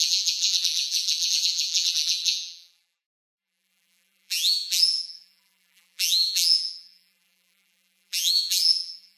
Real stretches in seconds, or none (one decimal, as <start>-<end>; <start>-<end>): none